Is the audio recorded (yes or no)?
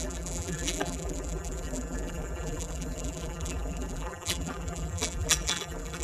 no